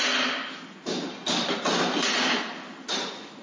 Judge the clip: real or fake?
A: real